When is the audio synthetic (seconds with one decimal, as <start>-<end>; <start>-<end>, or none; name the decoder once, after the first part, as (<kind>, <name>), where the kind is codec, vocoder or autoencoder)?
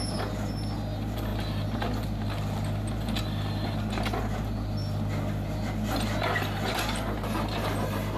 none